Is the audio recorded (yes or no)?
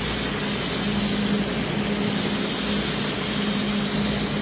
yes